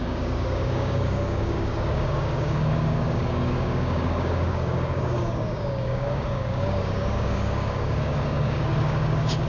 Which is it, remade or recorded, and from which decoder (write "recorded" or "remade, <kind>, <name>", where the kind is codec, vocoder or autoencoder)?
remade, codec, DAC